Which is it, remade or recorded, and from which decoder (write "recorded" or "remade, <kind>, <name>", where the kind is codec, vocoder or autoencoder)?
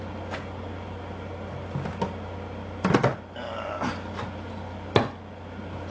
recorded